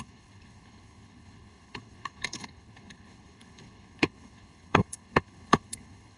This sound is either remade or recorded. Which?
remade